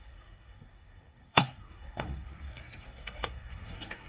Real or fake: fake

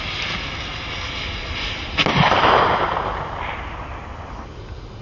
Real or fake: real